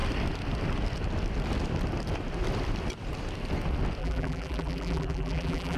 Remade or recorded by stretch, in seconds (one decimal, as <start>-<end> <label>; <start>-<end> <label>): 0.0-4.0 recorded; 4.0-5.8 remade